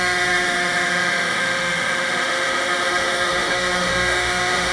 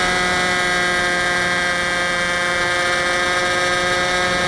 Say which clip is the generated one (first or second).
first